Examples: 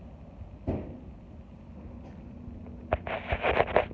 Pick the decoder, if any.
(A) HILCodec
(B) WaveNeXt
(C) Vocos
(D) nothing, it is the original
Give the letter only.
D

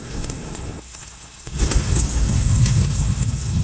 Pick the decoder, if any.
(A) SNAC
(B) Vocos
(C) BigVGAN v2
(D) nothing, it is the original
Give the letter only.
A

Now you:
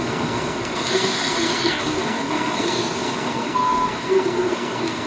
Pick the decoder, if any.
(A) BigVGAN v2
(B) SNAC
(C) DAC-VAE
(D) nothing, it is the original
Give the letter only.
B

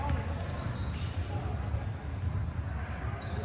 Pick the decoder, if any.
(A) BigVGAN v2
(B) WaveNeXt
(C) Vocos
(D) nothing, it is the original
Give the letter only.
D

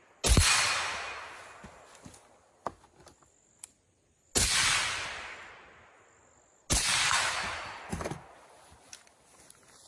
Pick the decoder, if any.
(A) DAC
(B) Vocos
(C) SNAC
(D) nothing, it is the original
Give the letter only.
D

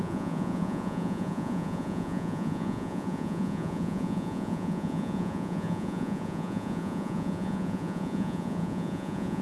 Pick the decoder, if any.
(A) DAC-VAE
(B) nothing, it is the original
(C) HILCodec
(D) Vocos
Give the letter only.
D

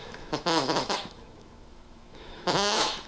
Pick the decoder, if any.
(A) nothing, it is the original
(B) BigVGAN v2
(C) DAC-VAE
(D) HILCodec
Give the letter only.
C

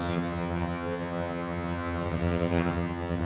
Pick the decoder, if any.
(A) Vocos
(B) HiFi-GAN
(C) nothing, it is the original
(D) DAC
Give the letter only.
B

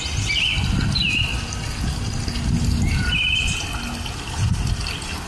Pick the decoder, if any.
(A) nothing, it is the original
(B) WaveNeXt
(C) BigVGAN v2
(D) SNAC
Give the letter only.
A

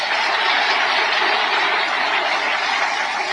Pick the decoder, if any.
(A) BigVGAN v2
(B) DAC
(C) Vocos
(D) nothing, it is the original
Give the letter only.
D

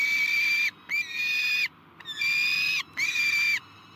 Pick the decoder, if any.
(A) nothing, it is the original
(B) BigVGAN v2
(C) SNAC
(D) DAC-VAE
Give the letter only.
A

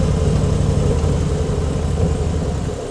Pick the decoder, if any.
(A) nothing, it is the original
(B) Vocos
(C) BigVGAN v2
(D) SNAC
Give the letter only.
A